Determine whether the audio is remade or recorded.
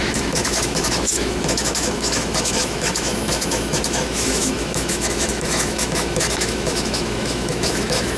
remade